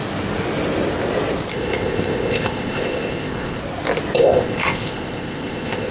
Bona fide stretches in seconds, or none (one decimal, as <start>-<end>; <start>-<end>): 0.0-1.5; 3.6-4.2